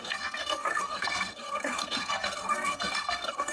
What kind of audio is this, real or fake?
fake